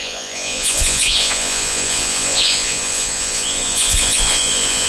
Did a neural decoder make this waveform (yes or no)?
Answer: yes